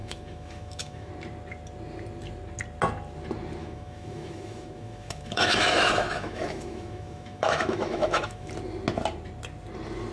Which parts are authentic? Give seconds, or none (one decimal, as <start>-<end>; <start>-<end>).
1.1-3.6; 8.5-10.1